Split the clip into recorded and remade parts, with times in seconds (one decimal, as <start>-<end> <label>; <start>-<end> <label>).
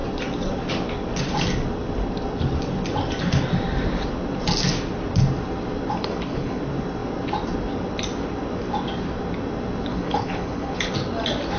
0.0-6.0 recorded; 6.0-6.6 remade; 6.6-9.9 recorded; 9.9-10.9 remade; 10.9-11.6 recorded